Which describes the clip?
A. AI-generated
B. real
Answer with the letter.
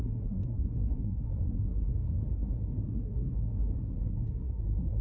A